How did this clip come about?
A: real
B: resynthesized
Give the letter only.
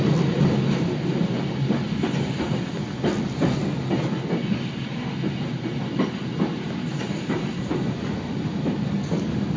A